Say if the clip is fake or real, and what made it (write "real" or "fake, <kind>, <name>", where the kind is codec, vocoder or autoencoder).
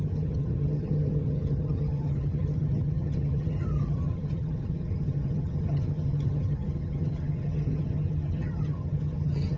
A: fake, vocoder, HiFi-GAN